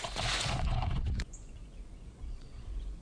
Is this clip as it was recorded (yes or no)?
no